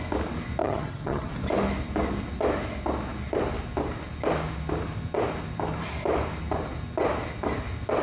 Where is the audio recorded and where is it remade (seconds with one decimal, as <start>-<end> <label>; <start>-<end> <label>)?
0.0-0.6 recorded; 0.6-1.3 remade; 1.3-8.0 recorded